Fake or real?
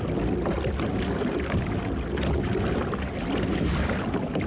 real